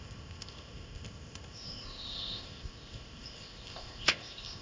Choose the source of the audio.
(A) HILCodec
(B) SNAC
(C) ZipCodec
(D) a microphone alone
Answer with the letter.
C